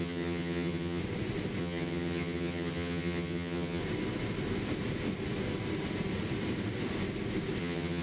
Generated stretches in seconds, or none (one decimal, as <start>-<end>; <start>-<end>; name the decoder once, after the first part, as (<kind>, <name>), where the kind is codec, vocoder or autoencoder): 0.0-1.0 (vocoder, HiFi-GAN); 1.6-3.8; 7.6-8.0